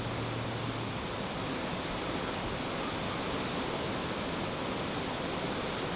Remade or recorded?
recorded